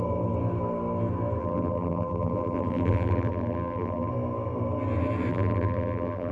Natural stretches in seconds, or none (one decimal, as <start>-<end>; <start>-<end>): 0.0-1.4; 4.1-5.3